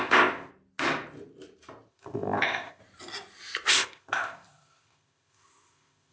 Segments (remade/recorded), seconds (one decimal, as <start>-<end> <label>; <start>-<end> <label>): 0.0-0.5 remade; 0.5-1.9 recorded; 1.9-2.8 remade; 2.8-3.7 recorded; 3.7-6.1 remade

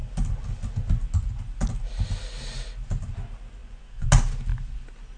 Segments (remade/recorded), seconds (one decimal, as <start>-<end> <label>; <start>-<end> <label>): 0.0-3.6 recorded; 3.6-4.1 remade; 4.1-5.2 recorded

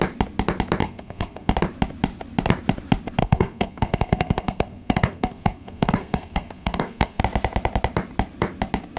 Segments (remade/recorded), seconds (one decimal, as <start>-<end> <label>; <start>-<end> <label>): 0.0-0.8 recorded; 0.8-1.5 remade; 1.5-3.2 recorded; 3.2-7.2 remade; 7.2-9.0 recorded

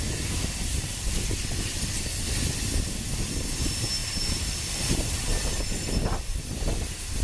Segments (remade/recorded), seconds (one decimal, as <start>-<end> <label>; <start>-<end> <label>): 0.0-0.7 recorded; 0.7-1.4 remade; 1.4-4.0 recorded; 4.0-5.3 remade; 5.3-7.2 recorded

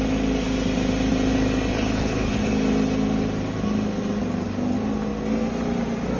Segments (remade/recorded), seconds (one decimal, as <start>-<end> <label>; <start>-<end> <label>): 0.0-1.7 recorded; 1.7-2.5 remade; 2.5-6.2 recorded